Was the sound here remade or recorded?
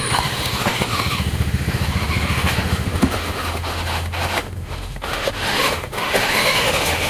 remade